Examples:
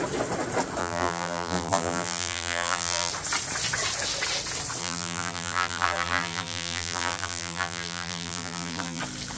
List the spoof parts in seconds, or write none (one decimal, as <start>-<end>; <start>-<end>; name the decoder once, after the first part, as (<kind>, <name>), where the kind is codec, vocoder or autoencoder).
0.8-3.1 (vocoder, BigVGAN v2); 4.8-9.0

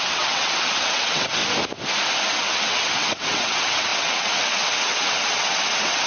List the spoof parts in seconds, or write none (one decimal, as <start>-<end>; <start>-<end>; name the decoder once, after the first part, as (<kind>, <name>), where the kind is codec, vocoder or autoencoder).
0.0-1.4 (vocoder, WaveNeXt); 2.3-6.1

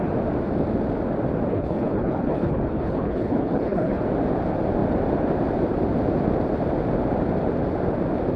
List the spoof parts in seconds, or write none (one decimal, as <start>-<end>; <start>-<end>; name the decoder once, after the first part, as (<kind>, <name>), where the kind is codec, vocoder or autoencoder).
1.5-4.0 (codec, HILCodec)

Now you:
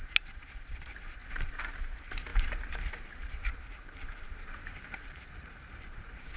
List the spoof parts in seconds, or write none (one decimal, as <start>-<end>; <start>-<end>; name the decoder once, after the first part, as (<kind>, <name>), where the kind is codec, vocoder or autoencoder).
1.2-1.8 (vocoder, BigVGAN v2); 2.3-6.4